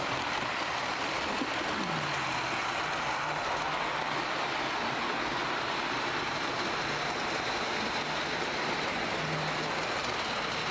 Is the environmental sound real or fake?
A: real